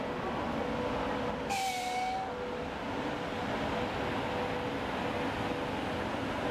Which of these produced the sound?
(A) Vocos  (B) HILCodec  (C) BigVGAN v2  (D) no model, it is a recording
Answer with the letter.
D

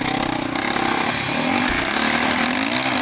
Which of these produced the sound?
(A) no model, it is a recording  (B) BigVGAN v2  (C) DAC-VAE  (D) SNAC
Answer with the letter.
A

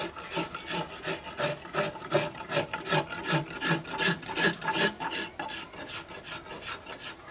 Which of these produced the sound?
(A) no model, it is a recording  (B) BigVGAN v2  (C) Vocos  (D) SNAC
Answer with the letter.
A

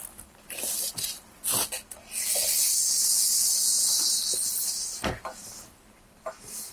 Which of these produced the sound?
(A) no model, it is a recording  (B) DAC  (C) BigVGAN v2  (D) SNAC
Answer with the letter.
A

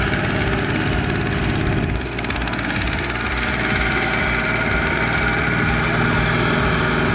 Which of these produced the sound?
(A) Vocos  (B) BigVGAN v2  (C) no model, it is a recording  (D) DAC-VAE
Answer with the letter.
C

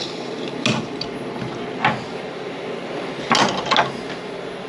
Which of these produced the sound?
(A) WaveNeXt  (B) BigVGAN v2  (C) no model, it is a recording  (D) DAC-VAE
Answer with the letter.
C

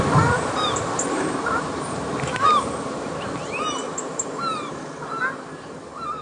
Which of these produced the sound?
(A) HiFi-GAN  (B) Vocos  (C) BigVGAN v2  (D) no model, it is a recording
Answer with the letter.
C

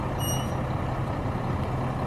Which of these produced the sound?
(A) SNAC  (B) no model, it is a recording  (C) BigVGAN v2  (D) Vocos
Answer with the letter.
B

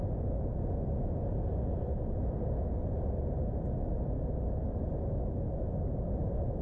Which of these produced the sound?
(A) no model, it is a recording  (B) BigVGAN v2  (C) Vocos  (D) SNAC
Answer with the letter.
A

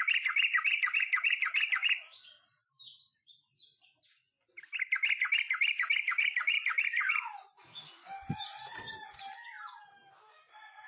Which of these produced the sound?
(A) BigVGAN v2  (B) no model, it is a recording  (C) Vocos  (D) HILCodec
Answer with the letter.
B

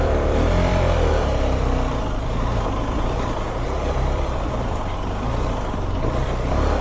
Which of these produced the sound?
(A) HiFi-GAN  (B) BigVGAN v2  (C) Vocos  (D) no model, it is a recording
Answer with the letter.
B